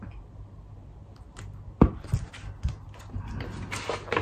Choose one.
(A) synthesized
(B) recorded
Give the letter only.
B